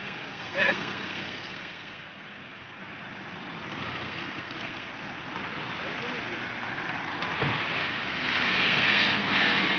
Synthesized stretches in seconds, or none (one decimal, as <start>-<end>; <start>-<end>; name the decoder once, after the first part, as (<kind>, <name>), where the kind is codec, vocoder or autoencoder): 0.0-2.8 (codec, SNAC); 3.7-4.9; 7.8-9.8